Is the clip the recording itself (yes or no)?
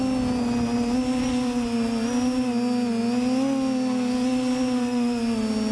yes